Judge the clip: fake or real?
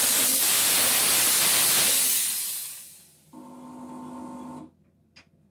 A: real